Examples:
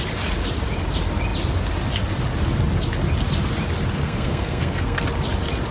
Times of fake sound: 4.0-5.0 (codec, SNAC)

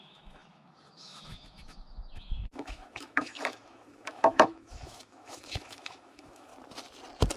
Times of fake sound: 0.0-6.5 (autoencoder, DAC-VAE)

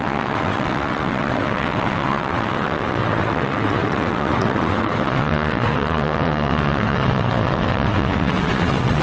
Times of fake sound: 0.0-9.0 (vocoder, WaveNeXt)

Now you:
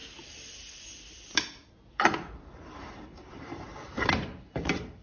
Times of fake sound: 1.9-5.0 (vocoder, BigVGAN v2)

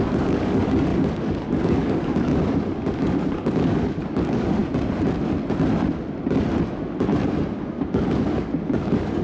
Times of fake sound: 0.0-4.6 (codec, DAC); 7.9-9.2

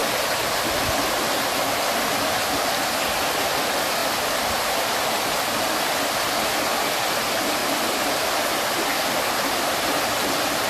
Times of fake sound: 3.2-4.0 (vocoder, BigVGAN v2); 5.5-7.6; 9.3-10.7